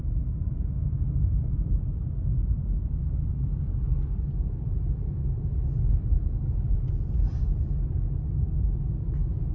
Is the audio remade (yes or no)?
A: no